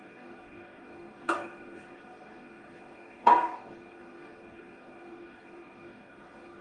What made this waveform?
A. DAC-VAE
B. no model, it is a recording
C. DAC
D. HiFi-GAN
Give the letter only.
C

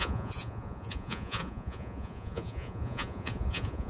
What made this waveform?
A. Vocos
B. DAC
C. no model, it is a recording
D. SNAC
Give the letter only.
A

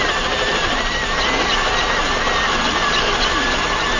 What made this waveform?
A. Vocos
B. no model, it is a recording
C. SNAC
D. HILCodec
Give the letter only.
B